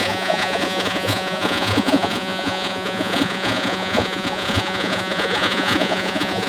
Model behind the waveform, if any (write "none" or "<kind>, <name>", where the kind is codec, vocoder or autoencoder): vocoder, Vocos